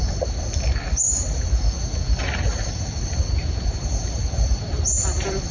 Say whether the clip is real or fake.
real